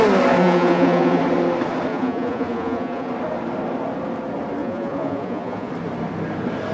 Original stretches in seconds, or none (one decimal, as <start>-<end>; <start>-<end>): 0.0-0.4; 1.2-1.9; 3.1-4.6; 5.7-6.7